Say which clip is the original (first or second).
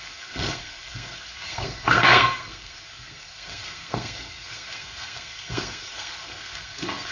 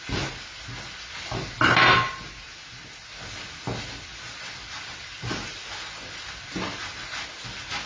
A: second